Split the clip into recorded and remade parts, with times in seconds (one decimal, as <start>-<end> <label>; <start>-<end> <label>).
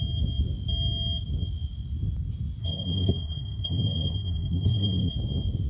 0.0-2.6 recorded; 2.6-5.1 remade; 5.1-5.7 recorded